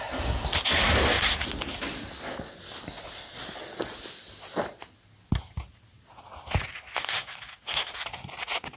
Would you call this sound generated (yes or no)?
no